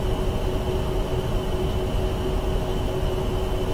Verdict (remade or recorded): recorded